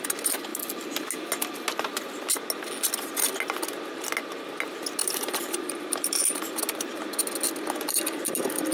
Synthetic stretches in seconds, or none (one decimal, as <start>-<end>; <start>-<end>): 5.0-6.6